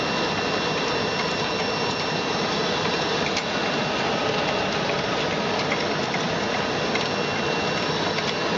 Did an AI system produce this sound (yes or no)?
no